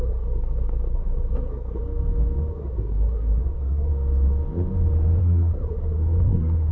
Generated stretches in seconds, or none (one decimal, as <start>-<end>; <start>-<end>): 0.0-1.8; 2.5-3.9; 5.2-6.7